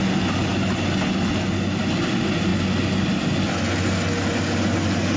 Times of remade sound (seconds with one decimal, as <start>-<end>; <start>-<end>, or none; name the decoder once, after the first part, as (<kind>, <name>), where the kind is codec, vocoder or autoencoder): none